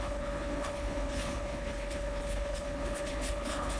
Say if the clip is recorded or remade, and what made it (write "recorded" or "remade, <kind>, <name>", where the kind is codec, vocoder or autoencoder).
remade, codec, HILCodec